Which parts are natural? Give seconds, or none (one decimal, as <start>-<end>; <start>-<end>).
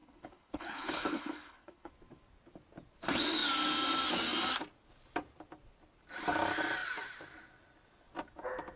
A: 1.9-8.8